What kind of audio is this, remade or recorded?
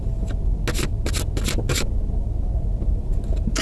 recorded